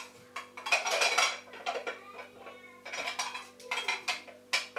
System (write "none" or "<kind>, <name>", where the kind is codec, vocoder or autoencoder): none